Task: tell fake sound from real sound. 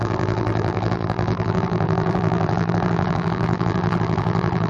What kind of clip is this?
fake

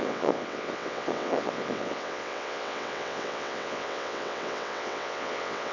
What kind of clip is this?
fake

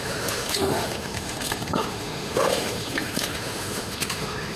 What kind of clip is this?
fake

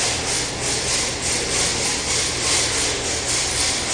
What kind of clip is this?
real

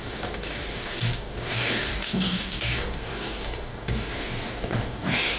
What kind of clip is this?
fake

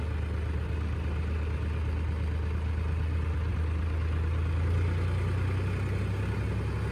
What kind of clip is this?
real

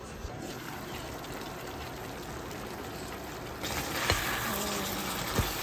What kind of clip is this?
real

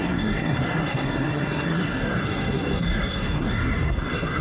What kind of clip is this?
fake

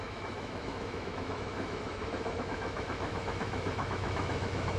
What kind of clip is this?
fake